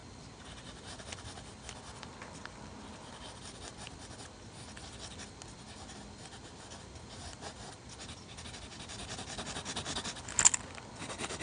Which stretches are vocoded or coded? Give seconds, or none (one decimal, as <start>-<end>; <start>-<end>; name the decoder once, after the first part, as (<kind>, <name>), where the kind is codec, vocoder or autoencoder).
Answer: none